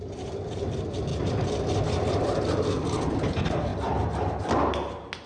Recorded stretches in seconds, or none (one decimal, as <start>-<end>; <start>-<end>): 0.0-1.1; 1.8-3.7; 4.3-5.3